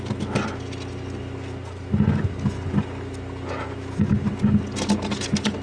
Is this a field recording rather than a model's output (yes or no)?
yes